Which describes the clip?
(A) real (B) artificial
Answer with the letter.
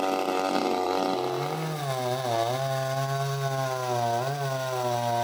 A